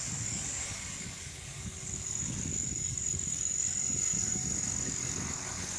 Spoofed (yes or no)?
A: yes